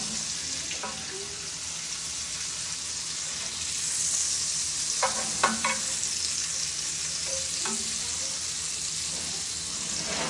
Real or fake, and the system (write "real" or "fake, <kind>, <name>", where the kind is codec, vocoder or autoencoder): real